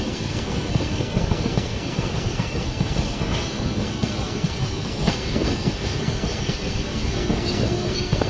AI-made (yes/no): yes